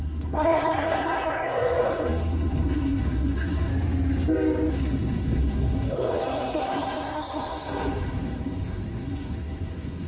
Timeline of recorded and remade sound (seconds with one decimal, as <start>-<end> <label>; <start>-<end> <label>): 0.0-3.7 remade; 3.7-4.7 recorded; 4.7-10.1 remade